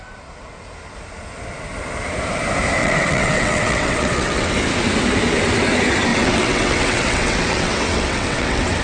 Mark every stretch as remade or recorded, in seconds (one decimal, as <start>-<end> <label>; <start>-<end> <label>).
0.0-2.8 recorded; 2.8-4.5 remade; 4.5-6.1 recorded; 6.1-8.8 remade